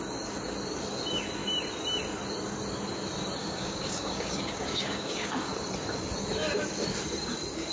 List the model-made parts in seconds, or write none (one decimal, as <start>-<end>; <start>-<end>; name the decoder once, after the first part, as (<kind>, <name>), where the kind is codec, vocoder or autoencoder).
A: 3.4-5.5 (codec, DAC)